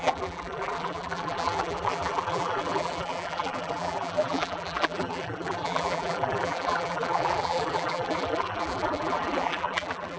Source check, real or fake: fake